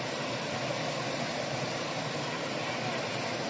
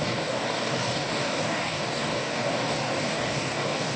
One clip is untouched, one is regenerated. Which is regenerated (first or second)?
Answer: second